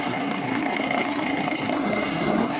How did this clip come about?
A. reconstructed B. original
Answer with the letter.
A